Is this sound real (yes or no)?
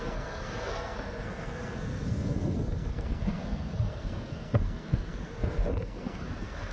no